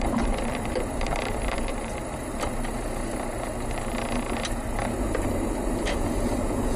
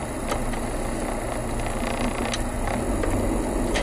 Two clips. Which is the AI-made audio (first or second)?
first